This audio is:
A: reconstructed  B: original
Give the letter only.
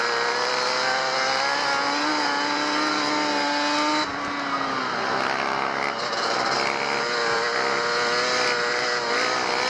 B